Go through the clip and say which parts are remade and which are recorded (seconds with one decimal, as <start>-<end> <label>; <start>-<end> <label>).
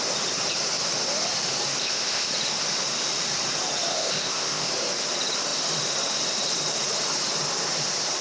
0.0-1.8 recorded; 1.8-2.3 remade; 2.3-3.9 recorded; 3.9-4.7 remade; 4.7-8.2 recorded